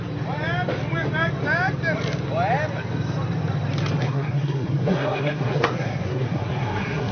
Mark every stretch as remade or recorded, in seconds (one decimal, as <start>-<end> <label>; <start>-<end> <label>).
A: 0.0-4.0 recorded; 4.0-7.1 remade